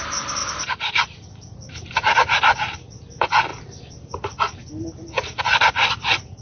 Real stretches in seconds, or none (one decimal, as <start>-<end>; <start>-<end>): 0.0-6.4